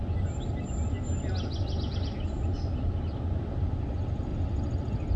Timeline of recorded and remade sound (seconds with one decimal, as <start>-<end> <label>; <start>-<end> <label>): 0.0-1.9 recorded; 1.9-2.6 remade; 2.6-4.3 recorded; 4.3-5.2 remade